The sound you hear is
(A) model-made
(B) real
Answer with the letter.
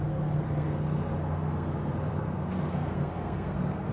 A